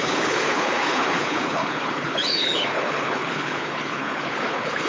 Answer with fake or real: fake